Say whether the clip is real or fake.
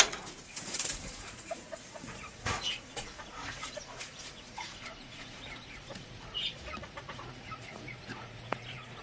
fake